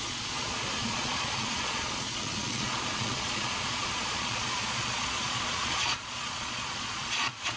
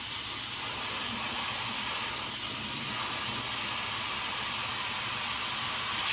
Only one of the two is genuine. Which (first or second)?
second